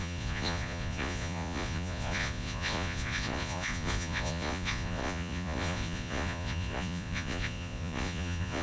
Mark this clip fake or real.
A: fake